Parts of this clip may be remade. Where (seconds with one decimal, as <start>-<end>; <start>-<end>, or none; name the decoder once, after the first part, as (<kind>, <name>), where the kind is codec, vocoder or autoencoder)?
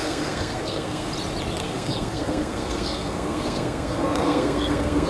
0.0-1.1 (codec, SNAC); 1.6-5.1